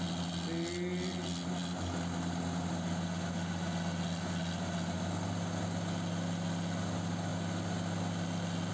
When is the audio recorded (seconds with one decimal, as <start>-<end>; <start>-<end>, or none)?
0.0-8.7